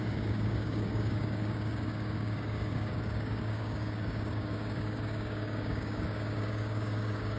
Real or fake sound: fake